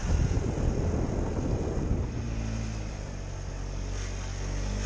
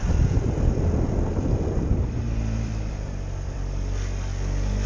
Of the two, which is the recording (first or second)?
first